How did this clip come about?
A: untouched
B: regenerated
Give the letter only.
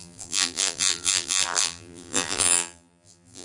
B